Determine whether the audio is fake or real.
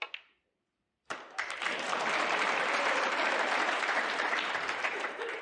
fake